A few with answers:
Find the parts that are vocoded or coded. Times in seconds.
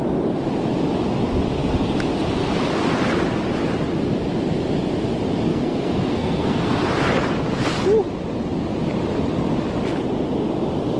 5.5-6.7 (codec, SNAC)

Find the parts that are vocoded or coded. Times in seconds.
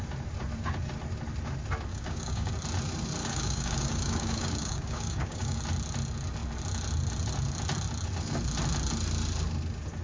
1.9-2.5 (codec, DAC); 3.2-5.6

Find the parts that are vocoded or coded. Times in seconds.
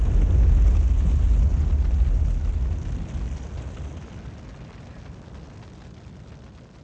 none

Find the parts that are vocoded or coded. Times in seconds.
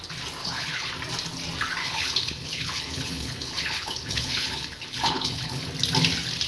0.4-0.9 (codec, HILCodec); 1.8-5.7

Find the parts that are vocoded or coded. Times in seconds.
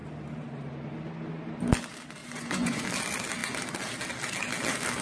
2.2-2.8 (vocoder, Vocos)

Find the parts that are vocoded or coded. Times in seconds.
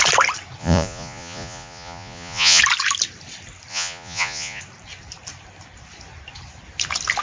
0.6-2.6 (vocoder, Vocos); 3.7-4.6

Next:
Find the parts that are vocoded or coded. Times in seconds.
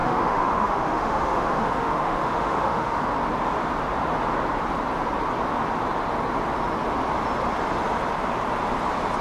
0.0-3.0 (autoencoder, DAC-VAE)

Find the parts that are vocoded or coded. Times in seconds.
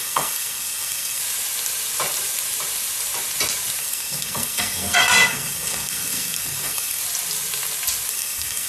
0.0-1.2 (codec, SNAC); 3.8-7.0; 8.1-8.7